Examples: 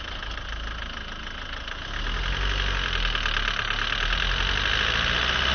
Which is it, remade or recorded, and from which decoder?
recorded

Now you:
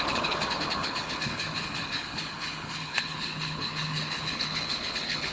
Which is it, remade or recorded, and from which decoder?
remade, codec, HILCodec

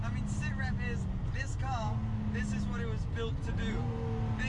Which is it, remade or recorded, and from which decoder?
recorded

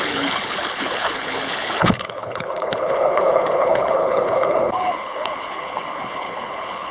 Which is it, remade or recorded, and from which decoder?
remade, codec, HILCodec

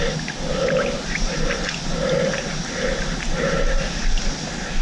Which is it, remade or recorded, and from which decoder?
recorded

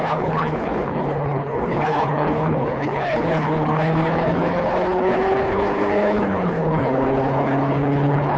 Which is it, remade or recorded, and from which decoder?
remade, codec, HILCodec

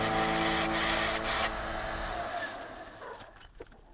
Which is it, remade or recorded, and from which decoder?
recorded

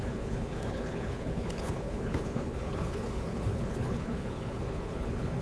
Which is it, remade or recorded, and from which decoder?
remade, codec, HILCodec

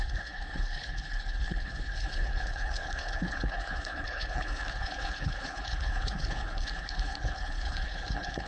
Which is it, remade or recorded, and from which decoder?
remade, codec, HILCodec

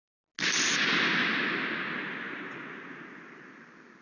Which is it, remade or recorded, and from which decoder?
recorded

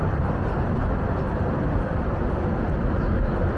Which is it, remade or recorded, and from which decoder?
recorded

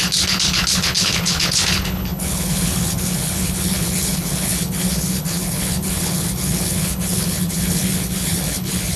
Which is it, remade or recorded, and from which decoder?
remade, codec, HILCodec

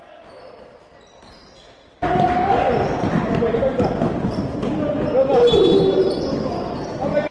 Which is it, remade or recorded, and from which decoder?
recorded